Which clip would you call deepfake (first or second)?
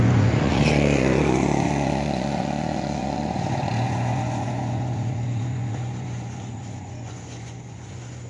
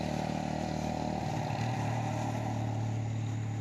first